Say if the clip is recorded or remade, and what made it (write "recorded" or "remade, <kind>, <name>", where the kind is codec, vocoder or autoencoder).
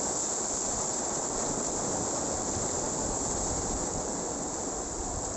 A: recorded